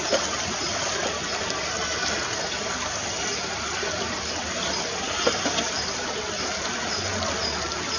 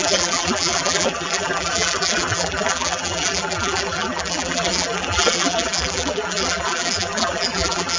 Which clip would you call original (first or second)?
first